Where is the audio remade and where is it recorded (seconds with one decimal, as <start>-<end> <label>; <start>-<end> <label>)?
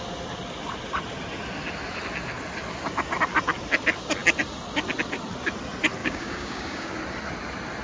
0.0-6.0 recorded; 6.0-7.0 remade; 7.0-7.8 recorded